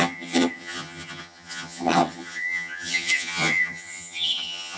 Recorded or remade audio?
remade